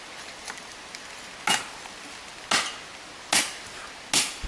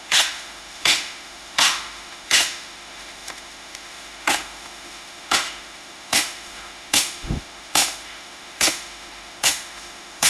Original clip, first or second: first